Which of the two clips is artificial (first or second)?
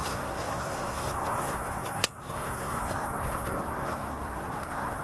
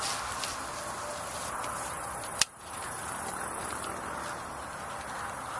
first